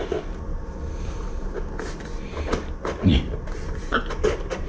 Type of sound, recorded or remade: recorded